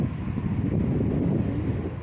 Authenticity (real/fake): real